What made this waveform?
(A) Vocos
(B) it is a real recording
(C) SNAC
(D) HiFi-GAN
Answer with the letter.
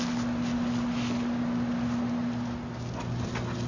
B